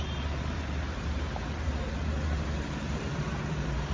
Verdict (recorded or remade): remade